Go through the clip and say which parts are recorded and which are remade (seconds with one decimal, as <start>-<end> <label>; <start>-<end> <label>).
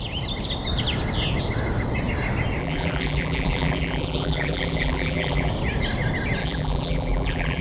0.0-2.6 recorded; 2.6-5.5 remade; 5.5-6.4 recorded; 6.4-7.6 remade